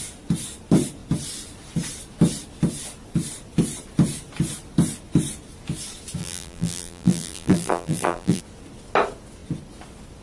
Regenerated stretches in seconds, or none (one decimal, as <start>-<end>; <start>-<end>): 6.2-8.4